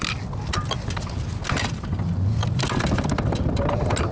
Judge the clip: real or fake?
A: real